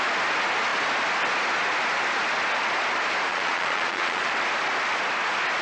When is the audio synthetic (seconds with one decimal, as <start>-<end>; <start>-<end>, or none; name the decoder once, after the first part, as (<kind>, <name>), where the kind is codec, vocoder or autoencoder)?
3.3-4.3 (vocoder, Vocos)